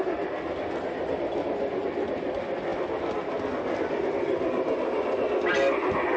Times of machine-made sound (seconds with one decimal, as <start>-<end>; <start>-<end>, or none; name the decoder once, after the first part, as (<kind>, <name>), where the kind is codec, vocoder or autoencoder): none